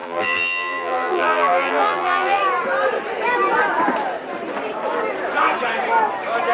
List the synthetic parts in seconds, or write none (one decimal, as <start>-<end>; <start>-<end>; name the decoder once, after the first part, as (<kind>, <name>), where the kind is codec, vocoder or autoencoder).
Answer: 0.0-2.4 (vocoder, BigVGAN v2)